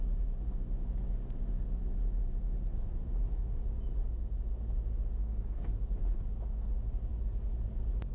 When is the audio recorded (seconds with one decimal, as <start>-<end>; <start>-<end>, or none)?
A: 0.0-5.2; 5.7-8.1